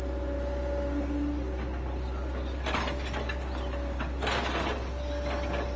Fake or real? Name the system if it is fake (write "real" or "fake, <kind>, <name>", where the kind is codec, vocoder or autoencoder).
real